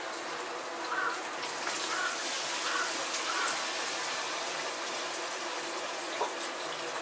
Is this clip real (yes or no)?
yes